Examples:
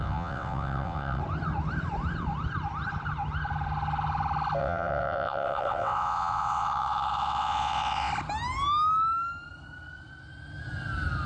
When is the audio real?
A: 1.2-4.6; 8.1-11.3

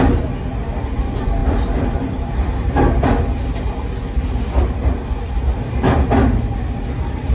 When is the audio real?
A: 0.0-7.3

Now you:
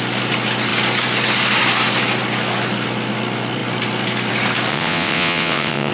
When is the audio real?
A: 0.0-4.7